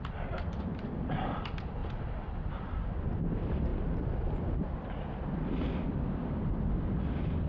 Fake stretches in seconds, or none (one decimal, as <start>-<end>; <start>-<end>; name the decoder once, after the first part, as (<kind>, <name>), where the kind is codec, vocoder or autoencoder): 0.0-1.8 (vocoder, BigVGAN v2); 2.5-3.7; 5.2-7.5